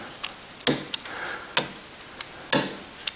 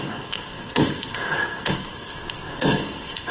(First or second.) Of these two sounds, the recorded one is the first